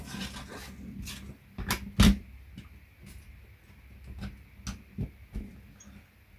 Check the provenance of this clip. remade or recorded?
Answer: recorded